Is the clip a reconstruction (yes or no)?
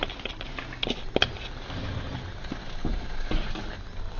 no